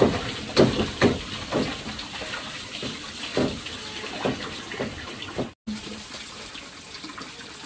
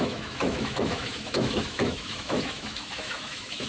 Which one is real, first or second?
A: first